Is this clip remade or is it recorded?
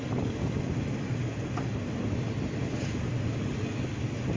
recorded